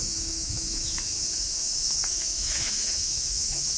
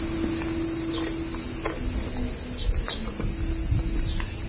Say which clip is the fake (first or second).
first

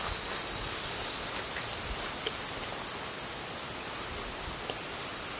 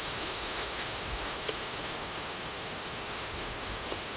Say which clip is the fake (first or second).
second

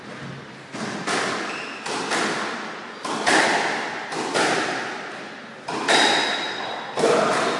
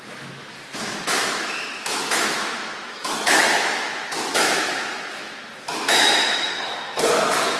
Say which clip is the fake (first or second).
second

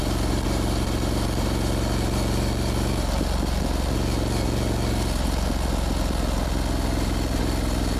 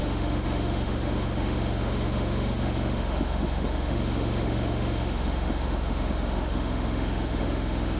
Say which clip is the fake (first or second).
second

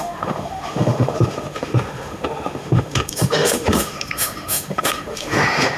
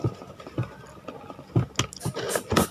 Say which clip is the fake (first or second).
first